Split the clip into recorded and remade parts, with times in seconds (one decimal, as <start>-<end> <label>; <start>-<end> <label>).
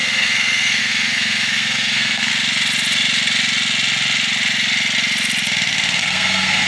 0.0-2.3 remade; 2.3-6.0 recorded; 6.0-6.7 remade